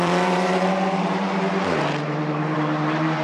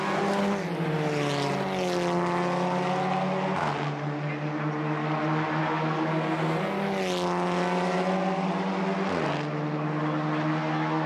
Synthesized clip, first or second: first